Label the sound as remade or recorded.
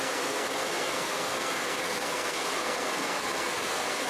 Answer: remade